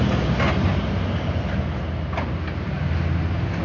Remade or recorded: recorded